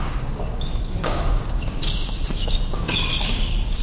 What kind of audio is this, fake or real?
fake